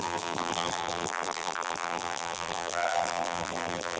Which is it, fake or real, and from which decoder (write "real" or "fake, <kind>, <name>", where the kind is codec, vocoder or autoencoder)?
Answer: fake, vocoder, BigVGAN v2